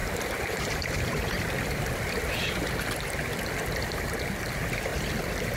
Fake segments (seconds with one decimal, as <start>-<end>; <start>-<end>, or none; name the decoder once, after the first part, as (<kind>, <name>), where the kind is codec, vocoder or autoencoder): 0.0-2.3 (vocoder, BigVGAN v2); 4.9-5.6